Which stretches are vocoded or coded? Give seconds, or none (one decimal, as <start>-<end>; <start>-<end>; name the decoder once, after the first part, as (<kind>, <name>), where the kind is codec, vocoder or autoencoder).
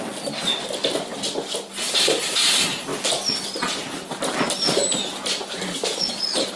none